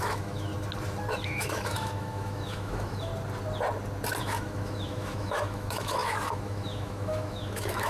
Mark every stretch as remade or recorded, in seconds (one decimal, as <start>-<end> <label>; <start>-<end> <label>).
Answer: 0.0-0.5 remade; 0.5-1.1 recorded; 1.1-3.1 remade; 3.1-4.2 recorded; 4.2-7.9 remade

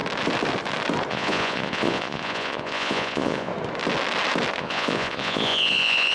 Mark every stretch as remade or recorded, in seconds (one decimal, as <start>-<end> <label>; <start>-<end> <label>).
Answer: 0.0-1.1 recorded; 1.1-3.5 remade; 3.5-4.6 recorded; 4.6-6.1 remade

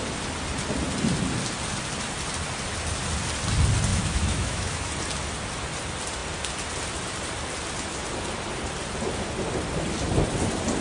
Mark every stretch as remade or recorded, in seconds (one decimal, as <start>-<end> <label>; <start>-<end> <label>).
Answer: 0.0-3.9 recorded; 3.9-4.9 remade; 4.9-10.8 recorded